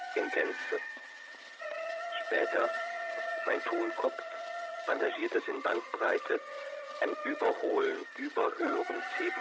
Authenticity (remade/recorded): remade